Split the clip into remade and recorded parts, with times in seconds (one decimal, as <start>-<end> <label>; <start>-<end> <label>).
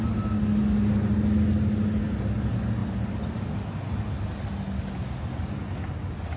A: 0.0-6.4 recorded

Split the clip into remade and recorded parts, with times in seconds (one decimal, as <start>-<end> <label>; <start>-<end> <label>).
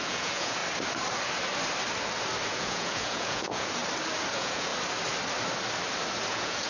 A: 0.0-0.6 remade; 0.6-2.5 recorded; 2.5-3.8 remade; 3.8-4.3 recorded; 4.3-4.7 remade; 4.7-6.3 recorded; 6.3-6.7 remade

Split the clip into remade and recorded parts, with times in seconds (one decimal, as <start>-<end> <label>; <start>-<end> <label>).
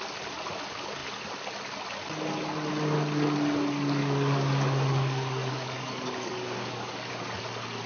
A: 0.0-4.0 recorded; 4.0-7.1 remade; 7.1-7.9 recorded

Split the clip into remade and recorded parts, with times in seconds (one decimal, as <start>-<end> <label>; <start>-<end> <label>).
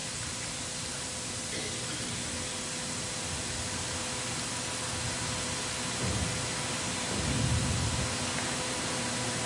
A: 0.0-2.0 remade; 2.0-9.5 recorded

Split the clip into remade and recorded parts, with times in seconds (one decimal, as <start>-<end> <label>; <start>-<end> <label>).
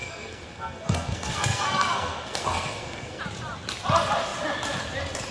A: 0.0-3.2 remade; 3.2-5.3 recorded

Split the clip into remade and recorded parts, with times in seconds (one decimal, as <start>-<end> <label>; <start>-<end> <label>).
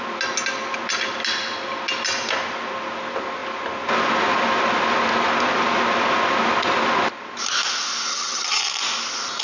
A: 0.0-8.1 recorded; 8.1-8.6 remade; 8.6-9.4 recorded